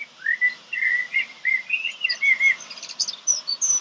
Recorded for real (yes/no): yes